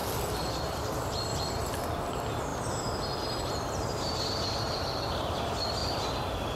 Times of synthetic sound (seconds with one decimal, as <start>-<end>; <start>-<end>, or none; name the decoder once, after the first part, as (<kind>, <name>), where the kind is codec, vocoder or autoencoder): 0.0-1.6 (vocoder, BigVGAN v2); 2.5-5.2; 5.8-6.6